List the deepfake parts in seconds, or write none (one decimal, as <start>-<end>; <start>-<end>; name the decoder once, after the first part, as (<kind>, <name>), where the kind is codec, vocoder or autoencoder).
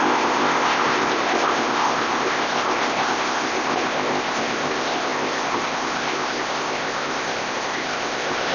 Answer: 0.0-8.5 (codec, ZipCodec)